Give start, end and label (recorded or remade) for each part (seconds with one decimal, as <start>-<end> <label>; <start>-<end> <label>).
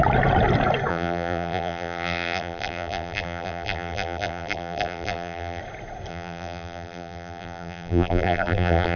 0.0-0.9 recorded; 0.9-5.6 remade; 5.6-6.1 recorded; 6.1-9.0 remade